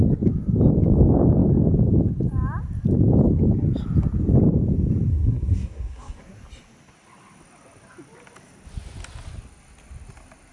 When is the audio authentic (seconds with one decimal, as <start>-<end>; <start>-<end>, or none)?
0.0-5.1; 6.2-10.5